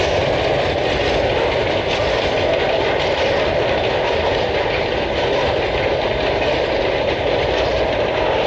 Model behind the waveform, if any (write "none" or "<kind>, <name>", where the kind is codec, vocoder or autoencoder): none